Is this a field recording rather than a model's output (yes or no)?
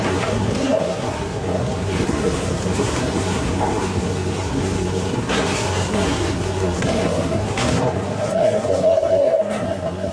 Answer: no